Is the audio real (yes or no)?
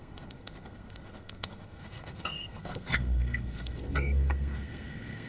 no